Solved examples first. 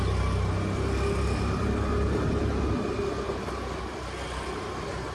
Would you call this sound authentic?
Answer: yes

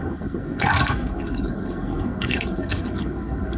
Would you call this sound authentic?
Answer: no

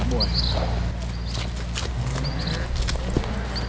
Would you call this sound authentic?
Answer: yes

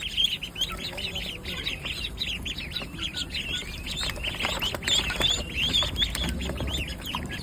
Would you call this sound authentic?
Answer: yes